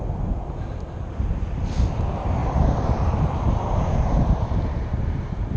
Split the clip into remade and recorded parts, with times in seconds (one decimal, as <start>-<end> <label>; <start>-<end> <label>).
0.0-2.4 recorded; 2.4-3.4 remade; 3.4-5.6 recorded